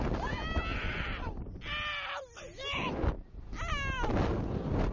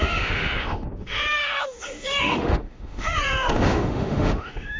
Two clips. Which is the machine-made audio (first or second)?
second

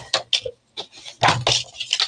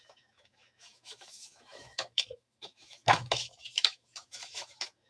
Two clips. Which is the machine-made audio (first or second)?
second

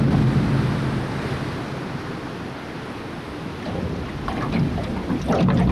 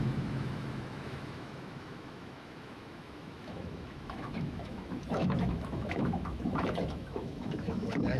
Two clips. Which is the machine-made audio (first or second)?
second